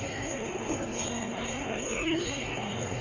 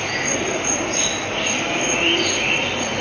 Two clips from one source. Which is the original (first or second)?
second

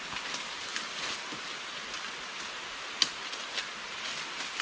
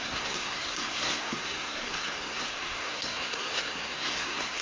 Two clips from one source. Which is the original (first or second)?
first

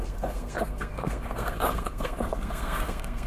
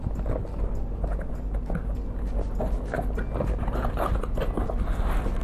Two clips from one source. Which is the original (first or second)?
second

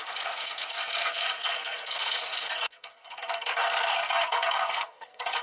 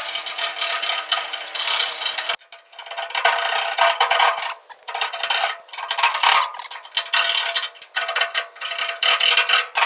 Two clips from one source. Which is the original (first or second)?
second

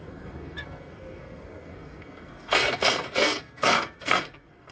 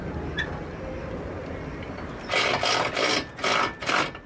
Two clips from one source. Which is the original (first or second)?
second